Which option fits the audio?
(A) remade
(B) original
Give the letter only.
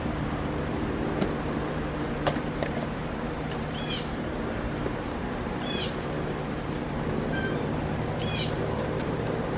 A